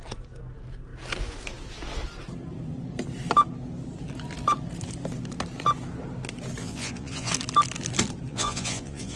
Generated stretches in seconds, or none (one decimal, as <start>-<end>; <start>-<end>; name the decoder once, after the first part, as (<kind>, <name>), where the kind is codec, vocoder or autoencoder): 6.6-7.3 (vocoder, Vocos); 8.3-9.2